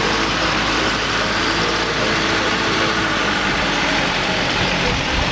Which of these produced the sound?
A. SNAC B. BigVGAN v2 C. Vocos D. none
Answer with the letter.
B